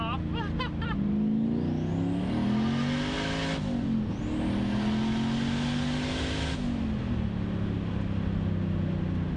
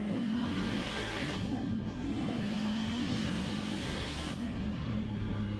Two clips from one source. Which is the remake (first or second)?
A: second